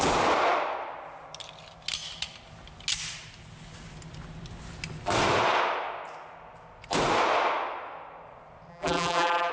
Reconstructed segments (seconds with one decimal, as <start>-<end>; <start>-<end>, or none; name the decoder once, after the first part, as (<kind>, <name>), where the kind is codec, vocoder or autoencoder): 8.7-9.5 (vocoder, BigVGAN v2)